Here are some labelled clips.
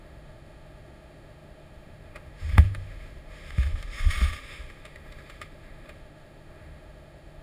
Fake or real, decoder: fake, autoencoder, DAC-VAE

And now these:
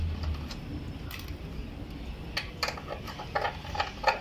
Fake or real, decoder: real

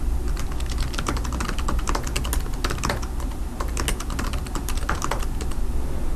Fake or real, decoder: real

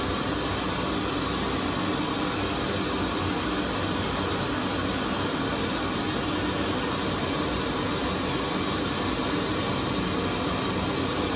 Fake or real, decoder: real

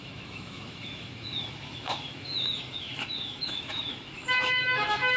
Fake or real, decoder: fake, autoencoder, DAC-VAE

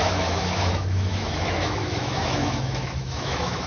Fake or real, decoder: fake, autoencoder, DAC-VAE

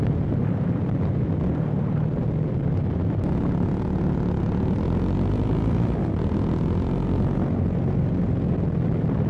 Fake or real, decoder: real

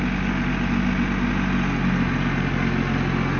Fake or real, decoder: real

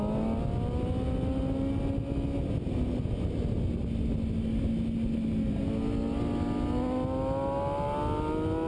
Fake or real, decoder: real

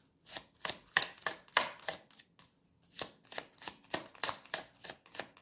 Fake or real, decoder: real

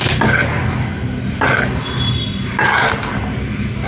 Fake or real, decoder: real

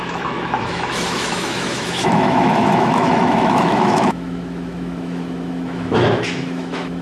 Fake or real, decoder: fake, autoencoder, DAC-VAE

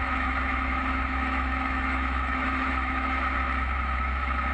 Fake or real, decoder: fake, autoencoder, DAC-VAE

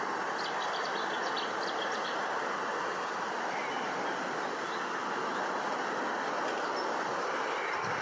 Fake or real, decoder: real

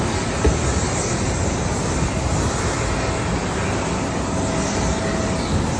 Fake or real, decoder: real